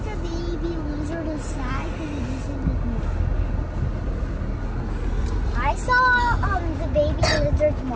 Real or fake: real